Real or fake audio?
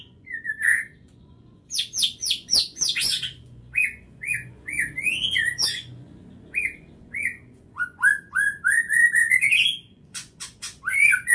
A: fake